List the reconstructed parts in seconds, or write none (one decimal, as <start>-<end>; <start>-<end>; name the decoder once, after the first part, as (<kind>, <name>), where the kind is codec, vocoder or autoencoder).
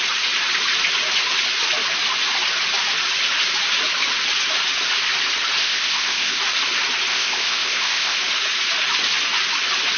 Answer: 5.6-6.4 (codec, ZipCodec); 7.1-8.2